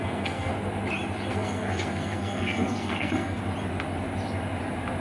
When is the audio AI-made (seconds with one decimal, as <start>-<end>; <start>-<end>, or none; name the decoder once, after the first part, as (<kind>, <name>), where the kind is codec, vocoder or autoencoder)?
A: 0.0-0.5 (codec, SNAC); 1.3-3.4